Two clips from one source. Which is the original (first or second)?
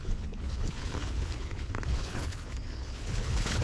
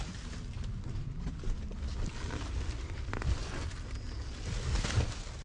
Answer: second